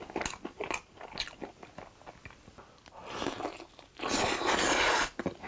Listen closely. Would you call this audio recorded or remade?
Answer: recorded